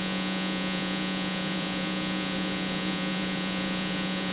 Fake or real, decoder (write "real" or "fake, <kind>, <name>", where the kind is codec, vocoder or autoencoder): fake, vocoder, Vocos